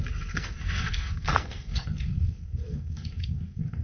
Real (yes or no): no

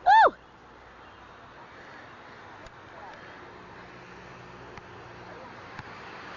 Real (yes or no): yes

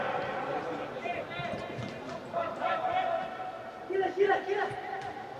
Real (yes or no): yes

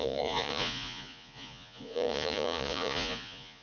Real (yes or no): no